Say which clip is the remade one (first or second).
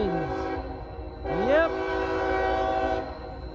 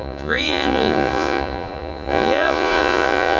second